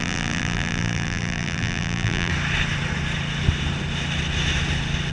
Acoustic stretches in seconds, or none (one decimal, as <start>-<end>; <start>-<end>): 2.3-5.1